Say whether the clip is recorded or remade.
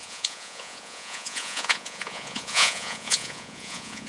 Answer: remade